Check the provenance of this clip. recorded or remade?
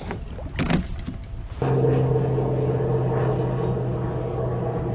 recorded